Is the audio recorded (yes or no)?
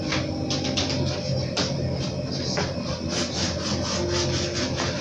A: yes